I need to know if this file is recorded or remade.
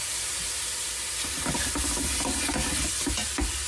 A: recorded